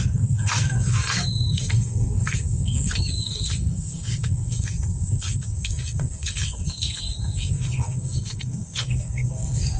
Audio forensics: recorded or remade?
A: remade